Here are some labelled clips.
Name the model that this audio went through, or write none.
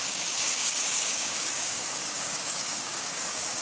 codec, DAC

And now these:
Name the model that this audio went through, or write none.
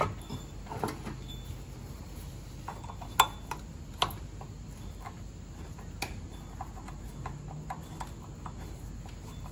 none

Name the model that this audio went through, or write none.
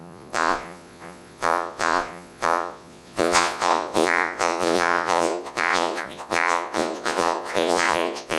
vocoder, Vocos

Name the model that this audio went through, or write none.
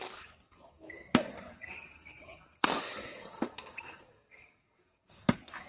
codec, DAC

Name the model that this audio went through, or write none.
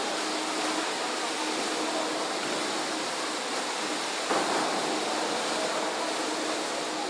none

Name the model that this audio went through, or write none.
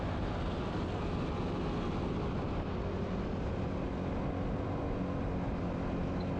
none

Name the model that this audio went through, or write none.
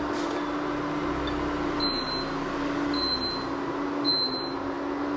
none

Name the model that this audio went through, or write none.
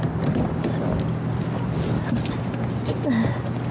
none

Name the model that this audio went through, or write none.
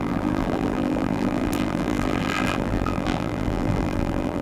vocoder, BigVGAN v2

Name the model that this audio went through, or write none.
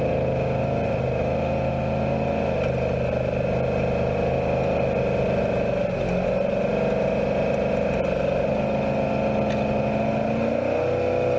none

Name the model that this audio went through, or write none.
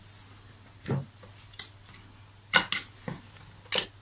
none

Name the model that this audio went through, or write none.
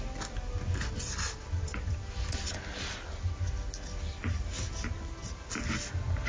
none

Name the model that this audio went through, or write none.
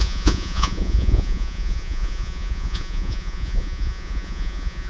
vocoder, Vocos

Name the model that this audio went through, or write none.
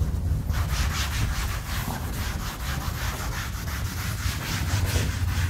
none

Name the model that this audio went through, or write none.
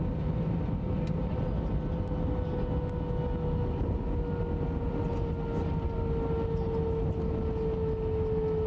none